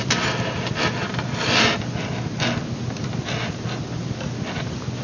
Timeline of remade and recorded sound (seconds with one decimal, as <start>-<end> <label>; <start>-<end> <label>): 0.0-5.0 recorded